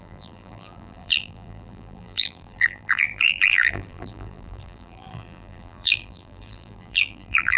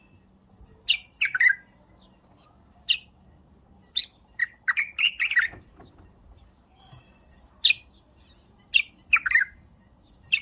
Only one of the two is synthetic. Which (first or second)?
first